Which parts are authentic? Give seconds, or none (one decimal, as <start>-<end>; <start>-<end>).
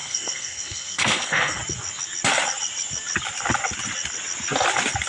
1.6-5.1